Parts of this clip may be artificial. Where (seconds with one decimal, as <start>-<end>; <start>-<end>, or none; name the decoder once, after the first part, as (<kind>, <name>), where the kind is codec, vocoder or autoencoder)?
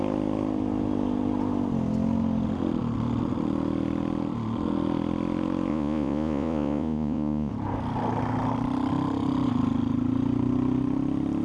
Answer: 5.7-7.5 (vocoder, Vocos)